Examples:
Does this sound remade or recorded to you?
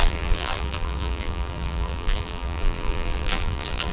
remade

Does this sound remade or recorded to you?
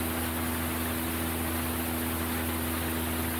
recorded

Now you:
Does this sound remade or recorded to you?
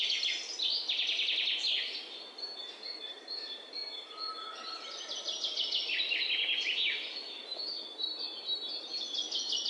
recorded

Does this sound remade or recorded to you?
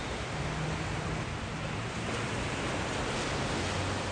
recorded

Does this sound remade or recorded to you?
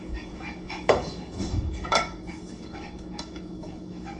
remade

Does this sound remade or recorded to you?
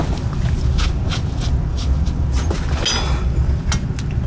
recorded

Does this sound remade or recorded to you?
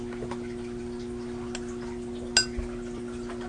recorded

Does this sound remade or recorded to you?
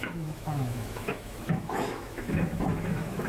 remade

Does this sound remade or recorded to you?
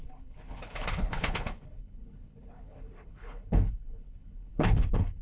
remade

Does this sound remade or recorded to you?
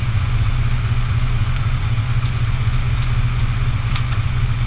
remade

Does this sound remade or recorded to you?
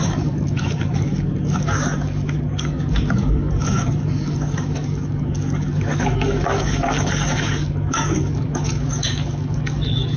remade